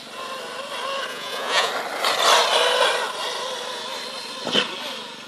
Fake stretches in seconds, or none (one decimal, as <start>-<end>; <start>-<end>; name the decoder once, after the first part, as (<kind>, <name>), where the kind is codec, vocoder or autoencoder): 1.1-1.7 (vocoder, Vocos)